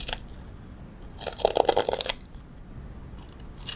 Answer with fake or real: real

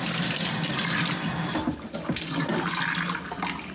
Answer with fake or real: real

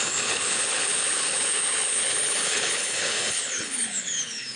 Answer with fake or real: fake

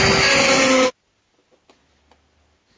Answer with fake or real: real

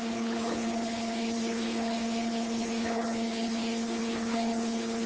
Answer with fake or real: fake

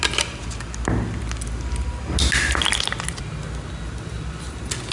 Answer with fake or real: real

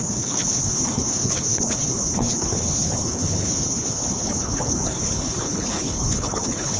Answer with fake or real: fake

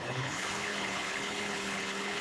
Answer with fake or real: fake